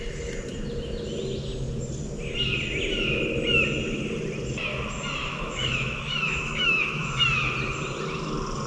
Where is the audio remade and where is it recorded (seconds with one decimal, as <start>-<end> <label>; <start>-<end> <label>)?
0.0-5.2 recorded; 5.2-7.5 remade; 7.5-8.7 recorded